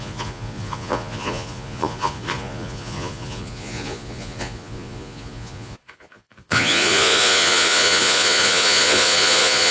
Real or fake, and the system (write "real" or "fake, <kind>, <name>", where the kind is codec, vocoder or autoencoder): fake, vocoder, Vocos